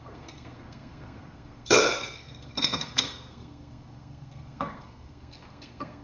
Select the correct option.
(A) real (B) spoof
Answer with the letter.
B